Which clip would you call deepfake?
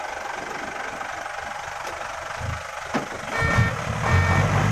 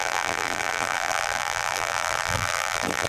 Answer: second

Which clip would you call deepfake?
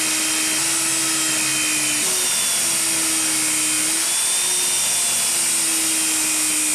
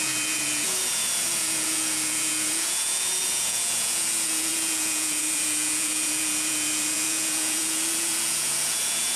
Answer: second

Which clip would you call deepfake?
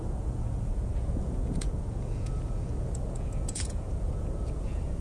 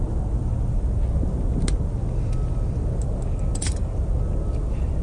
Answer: first